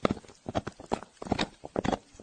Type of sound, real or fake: real